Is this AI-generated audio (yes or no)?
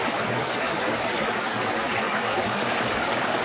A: yes